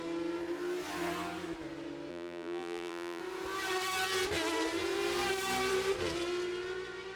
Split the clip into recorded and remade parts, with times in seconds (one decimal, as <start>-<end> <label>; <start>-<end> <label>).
0.0-2.1 recorded; 2.1-3.2 remade; 3.2-7.2 recorded